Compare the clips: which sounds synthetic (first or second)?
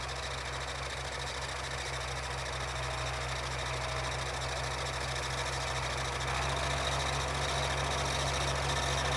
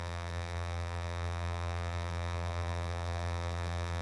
second